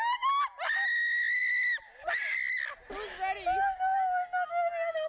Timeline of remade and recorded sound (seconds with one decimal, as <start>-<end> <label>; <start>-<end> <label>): 0.0-5.1 recorded